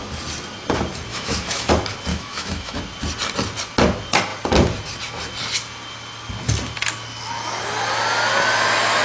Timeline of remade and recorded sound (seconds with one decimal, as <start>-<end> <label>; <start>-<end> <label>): 0.0-1.1 recorded; 1.1-1.7 remade; 1.7-2.1 recorded; 2.1-2.8 remade; 2.8-9.0 recorded